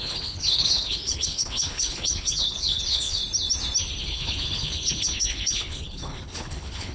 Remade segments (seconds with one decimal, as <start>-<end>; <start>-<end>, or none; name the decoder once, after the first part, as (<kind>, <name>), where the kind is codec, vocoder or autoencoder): 0.0-3.2 (codec, HILCodec); 4.0-6.9

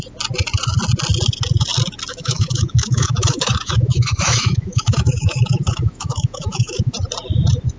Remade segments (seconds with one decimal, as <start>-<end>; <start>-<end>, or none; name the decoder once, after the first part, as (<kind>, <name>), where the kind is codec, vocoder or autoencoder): 2.1-6.8 (autoencoder, DAC-VAE)